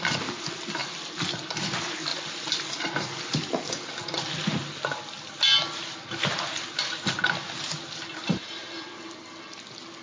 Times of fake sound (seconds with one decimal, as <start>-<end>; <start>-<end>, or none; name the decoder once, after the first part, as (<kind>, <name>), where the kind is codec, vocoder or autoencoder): 0.8-1.6 (vocoder, BigVGAN v2)